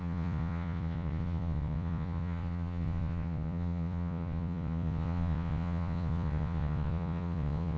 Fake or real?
fake